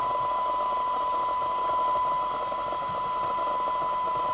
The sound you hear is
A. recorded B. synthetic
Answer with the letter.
A